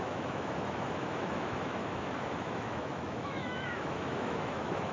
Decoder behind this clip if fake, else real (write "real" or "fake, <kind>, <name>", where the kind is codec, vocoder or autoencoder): fake, autoencoder, DAC-VAE